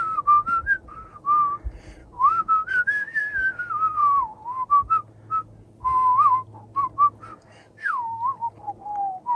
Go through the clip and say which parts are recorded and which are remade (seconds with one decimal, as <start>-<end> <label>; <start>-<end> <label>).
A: 0.0-2.0 recorded; 2.0-3.6 remade; 3.6-7.3 recorded; 7.3-8.5 remade; 8.5-9.3 recorded